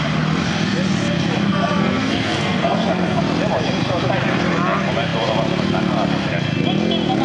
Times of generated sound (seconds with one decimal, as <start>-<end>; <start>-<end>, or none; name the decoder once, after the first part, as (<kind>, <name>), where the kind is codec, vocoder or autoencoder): 1.5-3.2 (codec, SNAC)